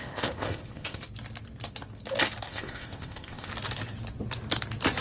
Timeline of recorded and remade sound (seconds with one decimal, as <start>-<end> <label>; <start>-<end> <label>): 0.0-1.0 remade; 1.0-2.5 recorded; 2.5-3.5 remade; 3.5-5.0 recorded